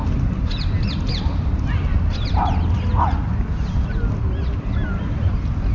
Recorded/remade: recorded